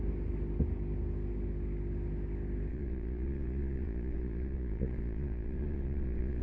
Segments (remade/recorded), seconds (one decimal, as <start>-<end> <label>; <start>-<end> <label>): 0.0-2.7 recorded; 2.7-6.4 remade